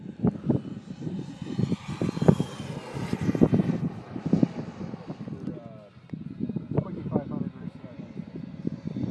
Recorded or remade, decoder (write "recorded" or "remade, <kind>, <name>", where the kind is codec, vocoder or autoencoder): recorded